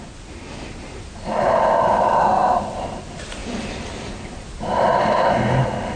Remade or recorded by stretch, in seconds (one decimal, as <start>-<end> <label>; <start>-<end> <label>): 0.0-2.4 recorded; 2.4-3.0 remade; 3.0-3.4 recorded; 3.4-5.2 remade; 5.2-6.0 recorded